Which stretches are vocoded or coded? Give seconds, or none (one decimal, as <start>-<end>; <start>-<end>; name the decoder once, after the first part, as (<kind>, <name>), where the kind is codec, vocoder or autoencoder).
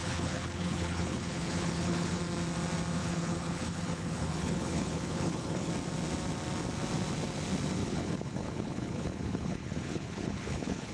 0.0-2.2 (codec, HILCodec); 3.0-5.7; 7.8-10.9